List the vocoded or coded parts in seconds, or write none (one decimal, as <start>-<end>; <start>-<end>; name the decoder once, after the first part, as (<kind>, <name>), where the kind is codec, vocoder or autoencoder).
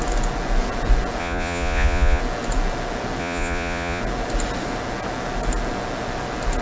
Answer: 1.2-2.2 (vocoder, Vocos); 3.2-4.0